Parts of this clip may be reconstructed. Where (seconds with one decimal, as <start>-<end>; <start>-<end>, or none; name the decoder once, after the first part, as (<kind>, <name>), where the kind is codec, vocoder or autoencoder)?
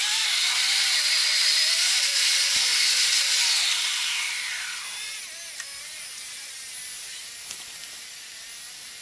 none